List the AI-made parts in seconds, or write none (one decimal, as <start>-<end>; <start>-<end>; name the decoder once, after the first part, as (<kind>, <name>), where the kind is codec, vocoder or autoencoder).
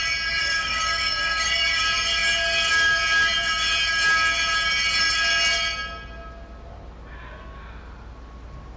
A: 0.4-1.8 (codec, DAC)